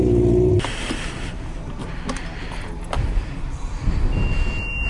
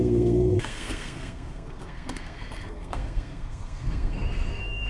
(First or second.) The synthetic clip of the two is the second